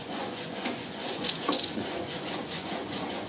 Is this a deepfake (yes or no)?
yes